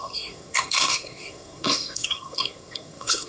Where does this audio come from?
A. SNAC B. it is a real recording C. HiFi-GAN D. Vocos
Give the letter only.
A